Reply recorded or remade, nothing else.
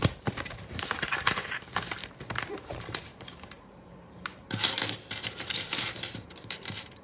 remade